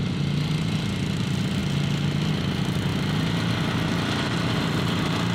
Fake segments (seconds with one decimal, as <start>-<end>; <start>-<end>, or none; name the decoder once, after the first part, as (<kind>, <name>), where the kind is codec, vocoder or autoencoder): none